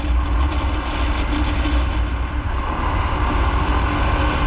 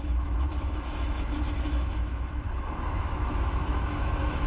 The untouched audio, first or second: first